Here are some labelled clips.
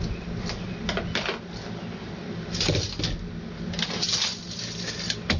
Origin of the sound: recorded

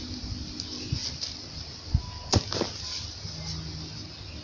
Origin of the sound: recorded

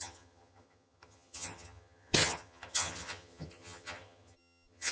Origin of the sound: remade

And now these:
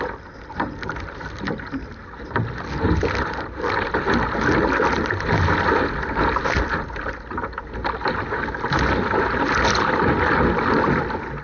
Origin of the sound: recorded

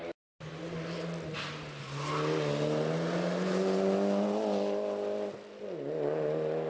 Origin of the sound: recorded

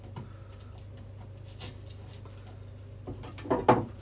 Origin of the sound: recorded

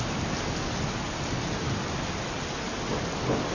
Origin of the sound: recorded